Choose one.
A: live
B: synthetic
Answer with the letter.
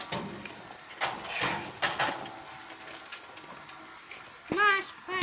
A